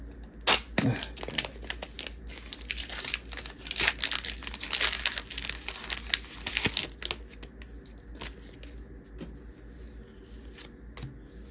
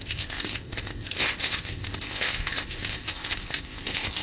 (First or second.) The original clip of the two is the first